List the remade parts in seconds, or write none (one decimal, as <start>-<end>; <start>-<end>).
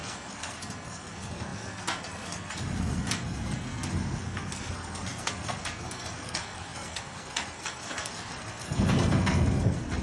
0.0-10.0